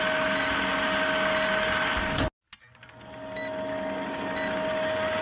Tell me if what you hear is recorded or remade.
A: recorded